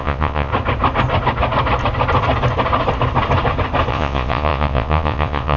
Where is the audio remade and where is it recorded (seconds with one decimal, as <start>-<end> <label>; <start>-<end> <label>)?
0.0-0.5 remade; 0.5-3.9 recorded; 3.9-5.6 remade